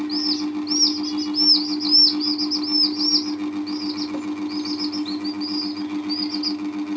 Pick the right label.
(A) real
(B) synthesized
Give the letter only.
A